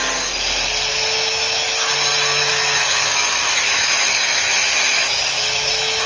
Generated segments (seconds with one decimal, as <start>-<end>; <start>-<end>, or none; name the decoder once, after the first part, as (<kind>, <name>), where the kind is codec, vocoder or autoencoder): 0.9-1.9 (autoencoder, DAC-VAE); 2.4-6.1